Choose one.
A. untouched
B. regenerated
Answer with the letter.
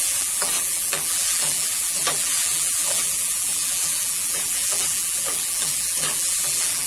B